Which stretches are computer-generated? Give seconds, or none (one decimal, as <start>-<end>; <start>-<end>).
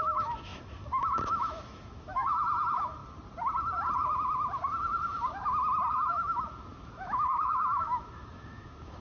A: 0.0-3.0; 5.9-9.0